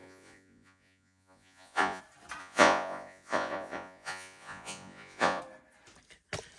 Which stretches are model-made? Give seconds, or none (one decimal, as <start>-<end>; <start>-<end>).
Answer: 0.0-2.0; 2.4-5.4